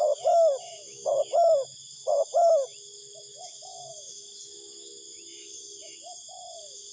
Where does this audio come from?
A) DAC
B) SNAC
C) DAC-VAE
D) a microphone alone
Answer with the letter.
C